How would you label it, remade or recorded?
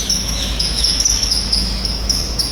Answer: remade